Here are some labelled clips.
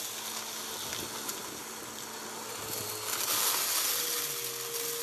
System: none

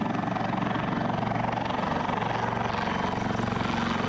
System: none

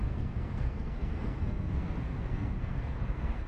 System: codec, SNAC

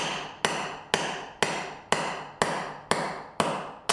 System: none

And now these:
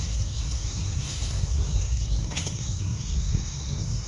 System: codec, SNAC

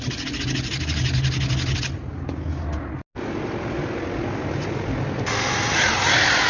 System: none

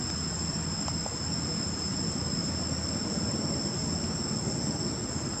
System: none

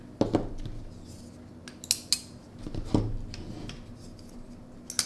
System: none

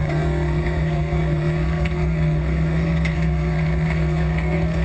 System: codec, SNAC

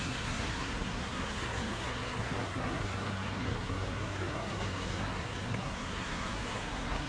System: codec, SNAC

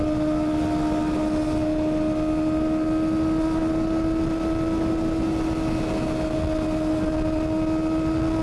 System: none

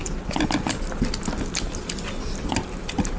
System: none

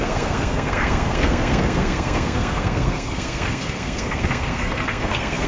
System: codec, SNAC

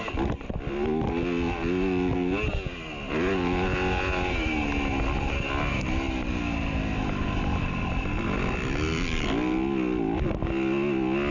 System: none